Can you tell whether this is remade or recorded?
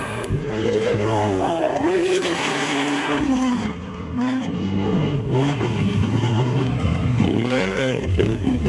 remade